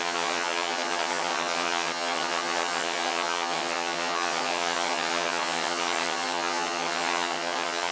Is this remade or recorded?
remade